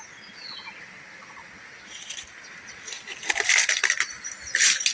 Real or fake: real